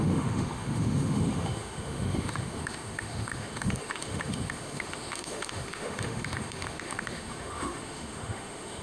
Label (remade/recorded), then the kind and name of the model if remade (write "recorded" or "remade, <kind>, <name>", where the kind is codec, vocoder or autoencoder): remade, autoencoder, DAC-VAE